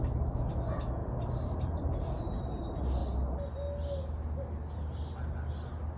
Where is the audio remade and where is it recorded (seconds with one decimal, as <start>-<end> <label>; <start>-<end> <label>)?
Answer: 0.0-6.0 recorded